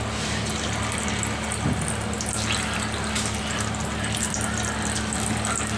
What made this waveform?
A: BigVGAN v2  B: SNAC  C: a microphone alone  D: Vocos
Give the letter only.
C